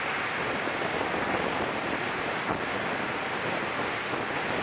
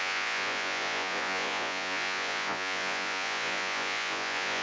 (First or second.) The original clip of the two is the first